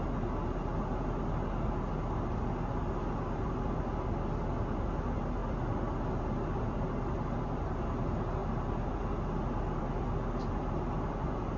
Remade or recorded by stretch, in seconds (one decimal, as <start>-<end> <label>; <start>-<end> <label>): 0.0-11.6 recorded